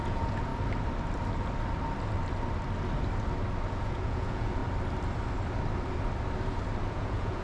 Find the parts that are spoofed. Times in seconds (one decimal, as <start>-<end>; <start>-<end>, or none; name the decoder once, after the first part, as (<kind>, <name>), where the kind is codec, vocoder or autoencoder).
0.0-0.5 (vocoder, Vocos); 3.7-4.6; 6.9-7.4